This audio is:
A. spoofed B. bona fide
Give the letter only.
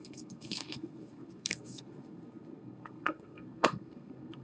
A